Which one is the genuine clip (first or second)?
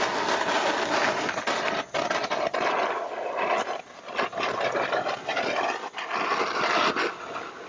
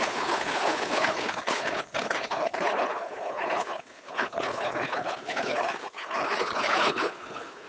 first